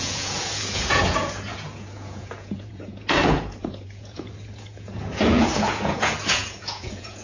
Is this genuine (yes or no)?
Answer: no